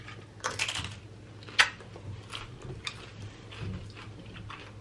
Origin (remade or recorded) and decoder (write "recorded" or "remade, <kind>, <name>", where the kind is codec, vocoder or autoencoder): recorded